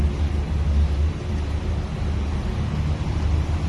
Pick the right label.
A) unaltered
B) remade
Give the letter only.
A